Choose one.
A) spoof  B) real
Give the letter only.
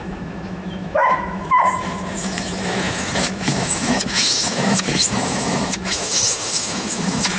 A